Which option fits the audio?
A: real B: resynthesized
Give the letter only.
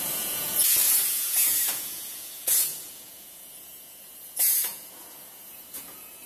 B